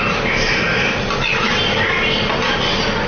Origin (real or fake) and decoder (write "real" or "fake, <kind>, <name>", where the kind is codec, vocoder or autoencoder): real